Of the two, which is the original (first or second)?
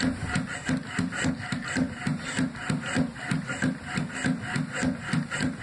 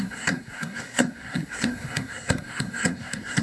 first